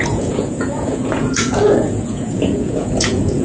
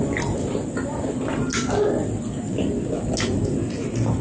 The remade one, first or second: first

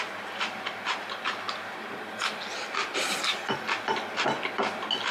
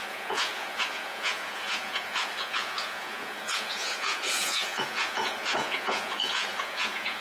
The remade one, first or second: second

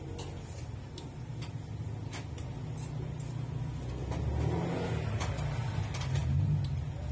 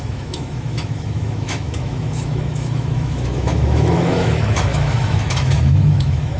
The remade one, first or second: second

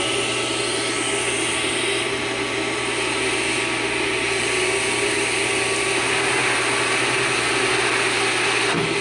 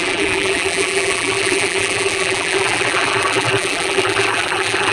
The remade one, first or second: second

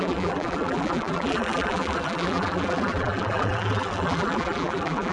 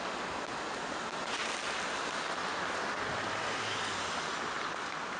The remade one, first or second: first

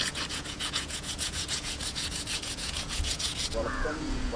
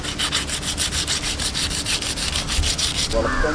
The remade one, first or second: first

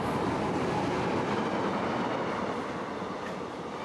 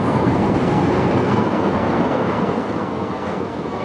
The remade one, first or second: second